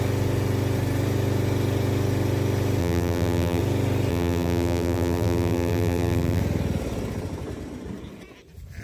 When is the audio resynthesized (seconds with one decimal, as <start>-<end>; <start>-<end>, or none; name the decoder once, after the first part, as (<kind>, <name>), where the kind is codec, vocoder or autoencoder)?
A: 2.8-3.6 (vocoder, BigVGAN v2); 4.1-6.4